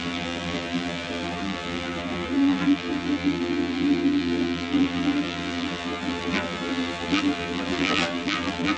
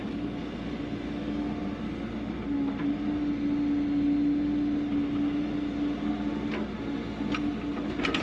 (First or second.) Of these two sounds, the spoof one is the first